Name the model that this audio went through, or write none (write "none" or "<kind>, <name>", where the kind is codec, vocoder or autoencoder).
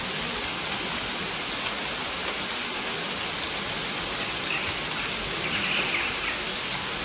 none